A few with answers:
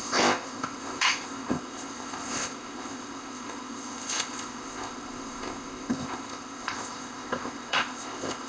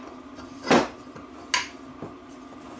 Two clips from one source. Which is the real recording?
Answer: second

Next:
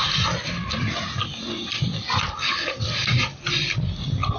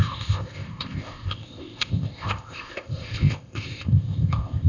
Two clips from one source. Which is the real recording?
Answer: first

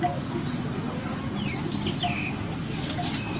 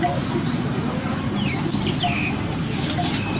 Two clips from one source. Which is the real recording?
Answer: first